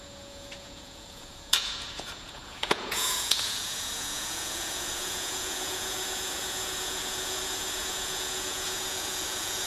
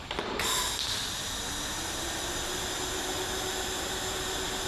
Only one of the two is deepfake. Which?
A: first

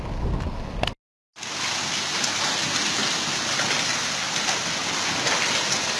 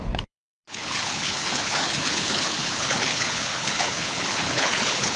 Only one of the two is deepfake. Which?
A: second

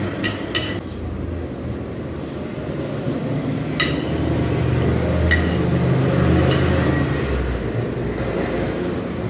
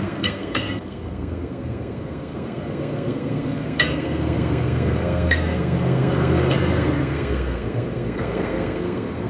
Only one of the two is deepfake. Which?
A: second